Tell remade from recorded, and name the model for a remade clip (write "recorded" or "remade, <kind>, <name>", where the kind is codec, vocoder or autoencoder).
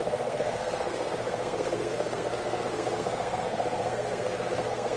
remade, codec, SNAC